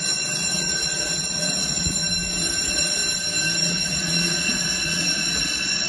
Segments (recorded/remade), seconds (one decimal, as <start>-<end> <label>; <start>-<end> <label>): 0.0-2.0 remade; 2.0-2.6 recorded; 2.6-3.0 remade; 3.0-3.6 recorded; 3.6-5.9 remade